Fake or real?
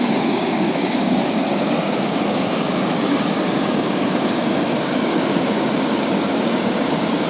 fake